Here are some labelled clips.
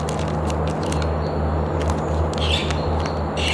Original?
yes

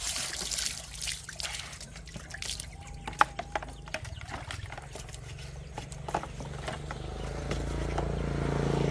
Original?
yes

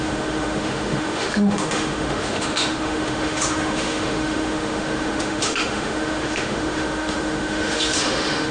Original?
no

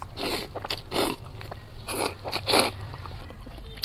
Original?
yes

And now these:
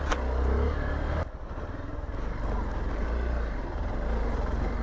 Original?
yes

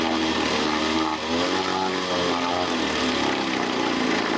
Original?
yes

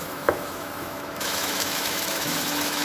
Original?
no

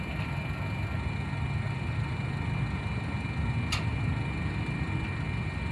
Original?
yes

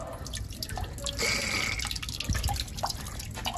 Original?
yes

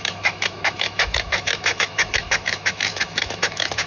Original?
no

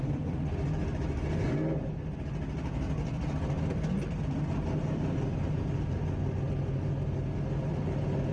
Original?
yes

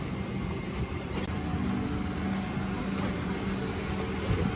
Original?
yes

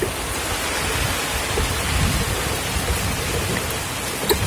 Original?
yes